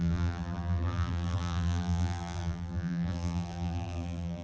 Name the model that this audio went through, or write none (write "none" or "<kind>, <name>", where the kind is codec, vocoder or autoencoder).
vocoder, BigVGAN v2